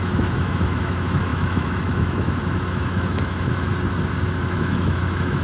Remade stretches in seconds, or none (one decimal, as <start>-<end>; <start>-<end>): 0.0-3.7; 4.4-5.4